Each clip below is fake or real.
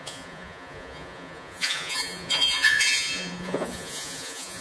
fake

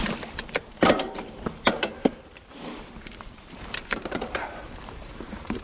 fake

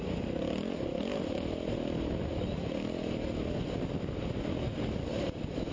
real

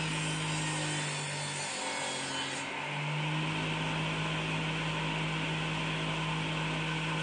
real